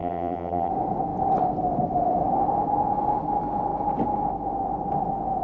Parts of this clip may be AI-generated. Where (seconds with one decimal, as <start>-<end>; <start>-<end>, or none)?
0.0-0.7